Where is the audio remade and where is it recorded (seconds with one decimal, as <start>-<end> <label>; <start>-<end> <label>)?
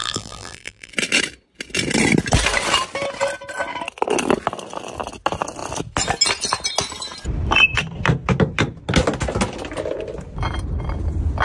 0.0-0.9 remade; 0.9-11.4 recorded